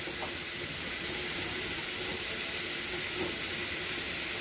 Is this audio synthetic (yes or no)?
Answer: no